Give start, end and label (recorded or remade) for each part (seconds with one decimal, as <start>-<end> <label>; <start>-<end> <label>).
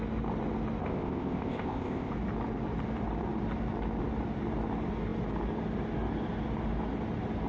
0.0-0.8 recorded; 0.8-2.1 remade; 2.1-7.5 recorded